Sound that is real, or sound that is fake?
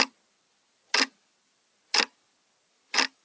real